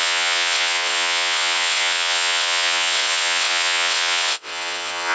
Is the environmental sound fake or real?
fake